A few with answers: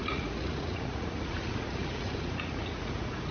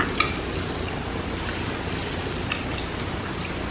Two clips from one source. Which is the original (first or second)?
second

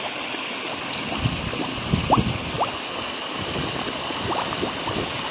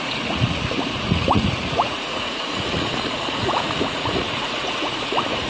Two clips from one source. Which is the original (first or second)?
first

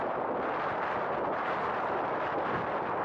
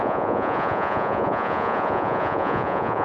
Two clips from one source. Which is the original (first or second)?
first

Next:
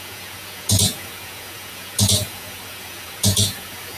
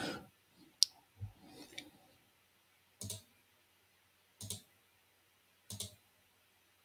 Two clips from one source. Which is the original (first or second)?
second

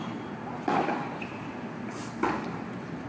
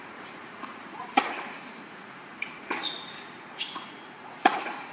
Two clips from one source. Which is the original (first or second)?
first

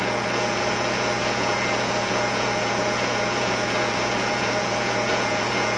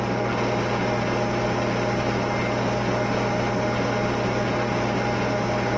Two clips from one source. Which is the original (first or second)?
second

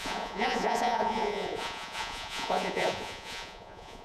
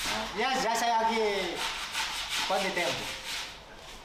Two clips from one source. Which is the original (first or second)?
second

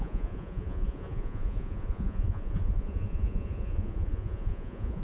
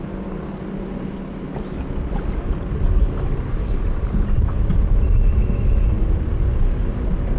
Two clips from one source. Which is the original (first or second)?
second